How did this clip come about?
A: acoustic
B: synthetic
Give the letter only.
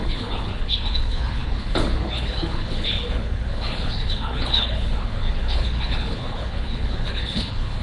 B